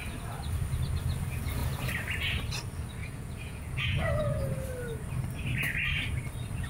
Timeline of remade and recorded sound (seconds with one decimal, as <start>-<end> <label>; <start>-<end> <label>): 0.0-3.0 recorded; 3.0-4.4 remade; 4.4-6.7 recorded